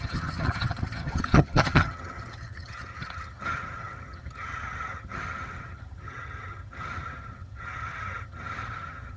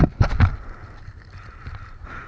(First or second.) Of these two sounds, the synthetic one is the first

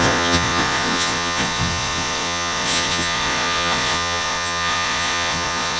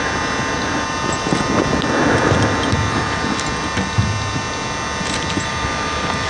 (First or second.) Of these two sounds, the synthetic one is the first